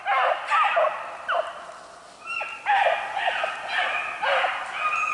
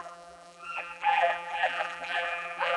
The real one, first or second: first